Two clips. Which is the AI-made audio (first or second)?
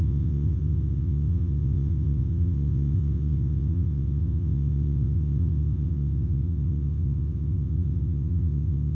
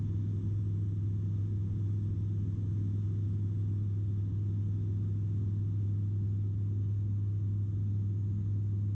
first